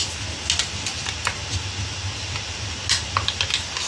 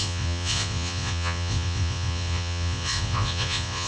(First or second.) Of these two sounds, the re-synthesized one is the second